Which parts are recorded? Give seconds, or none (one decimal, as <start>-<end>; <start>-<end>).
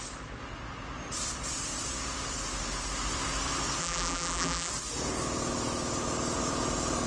0.0-3.8; 4.7-7.1